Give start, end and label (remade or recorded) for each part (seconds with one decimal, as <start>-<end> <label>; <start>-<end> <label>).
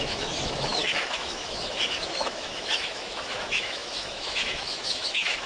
0.0-5.5 remade